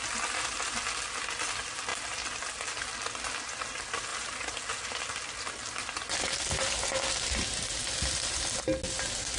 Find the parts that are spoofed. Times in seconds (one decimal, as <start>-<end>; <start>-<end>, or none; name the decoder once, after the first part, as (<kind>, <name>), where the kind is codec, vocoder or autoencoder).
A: 4.1-5.0 (vocoder, BigVGAN v2)